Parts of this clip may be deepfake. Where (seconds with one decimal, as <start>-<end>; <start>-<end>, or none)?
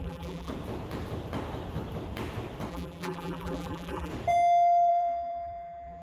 0.0-0.5; 2.7-4.1; 4.9-6.0